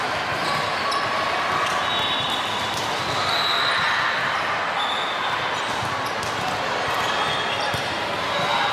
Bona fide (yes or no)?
yes